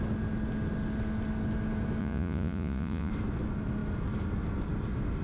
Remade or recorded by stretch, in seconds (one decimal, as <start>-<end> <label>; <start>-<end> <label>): 0.0-2.0 recorded; 2.0-3.1 remade; 3.1-5.2 recorded